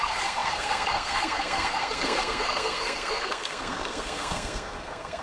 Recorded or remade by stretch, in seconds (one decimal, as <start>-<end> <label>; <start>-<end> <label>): 0.0-5.2 remade